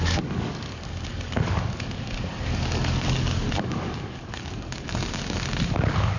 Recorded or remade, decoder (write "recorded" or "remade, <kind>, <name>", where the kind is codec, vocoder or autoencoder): remade, codec, DAC